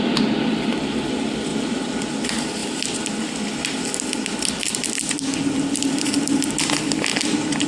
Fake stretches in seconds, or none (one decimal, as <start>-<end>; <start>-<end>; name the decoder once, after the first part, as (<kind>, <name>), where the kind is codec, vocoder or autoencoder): 1.5-2.1 (vocoder, BigVGAN v2); 2.6-6.6